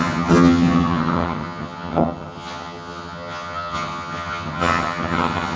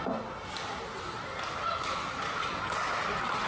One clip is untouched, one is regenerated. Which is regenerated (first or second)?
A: first